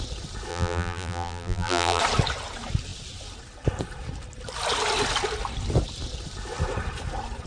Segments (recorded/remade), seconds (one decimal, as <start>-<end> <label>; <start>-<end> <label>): 0.0-0.5 recorded; 0.5-2.0 remade; 2.0-7.5 recorded

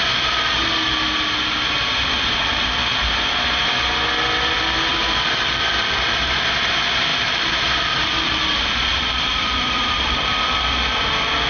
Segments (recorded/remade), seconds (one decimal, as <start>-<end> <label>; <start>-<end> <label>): 0.0-4.9 recorded; 4.9-6.4 remade; 6.4-7.1 recorded; 7.1-7.9 remade; 7.9-8.9 recorded; 8.9-11.1 remade; 11.1-11.5 recorded

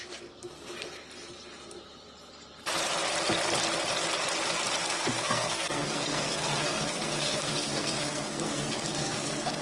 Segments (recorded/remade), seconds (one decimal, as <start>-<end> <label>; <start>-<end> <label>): 0.0-0.7 remade; 0.7-4.8 recorded; 4.8-9.6 remade

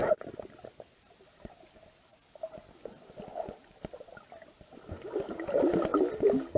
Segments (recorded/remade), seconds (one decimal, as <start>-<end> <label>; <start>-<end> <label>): 0.0-6.6 recorded

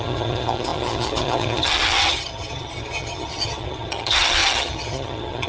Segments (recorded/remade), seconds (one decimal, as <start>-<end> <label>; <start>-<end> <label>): 0.0-5.5 remade

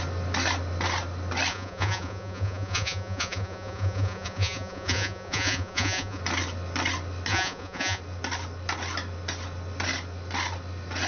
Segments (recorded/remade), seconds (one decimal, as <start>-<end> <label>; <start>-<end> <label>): 0.0-1.5 recorded; 1.5-6.2 remade; 6.2-7.3 recorded; 7.3-8.0 remade; 8.0-11.1 recorded